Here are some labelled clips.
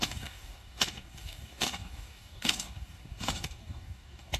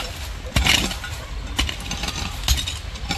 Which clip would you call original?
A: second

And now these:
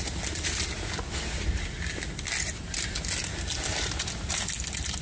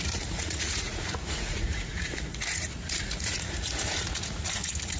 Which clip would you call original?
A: first